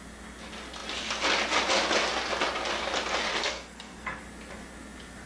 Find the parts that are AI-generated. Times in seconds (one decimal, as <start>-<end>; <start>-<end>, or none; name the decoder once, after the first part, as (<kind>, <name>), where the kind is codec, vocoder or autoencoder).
3.3-4.2 (codec, SNAC)